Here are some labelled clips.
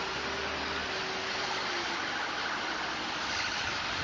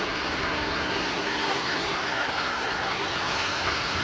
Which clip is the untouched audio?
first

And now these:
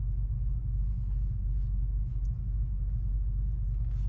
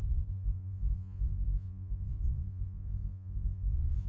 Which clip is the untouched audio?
first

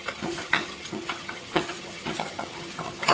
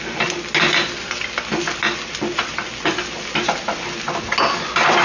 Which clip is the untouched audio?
second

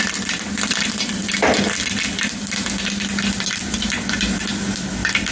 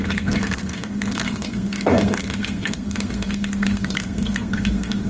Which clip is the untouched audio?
first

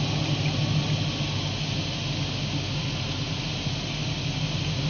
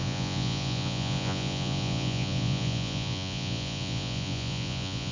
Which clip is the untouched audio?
first